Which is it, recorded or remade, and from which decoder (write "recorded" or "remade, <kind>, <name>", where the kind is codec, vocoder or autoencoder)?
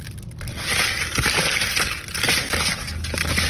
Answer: recorded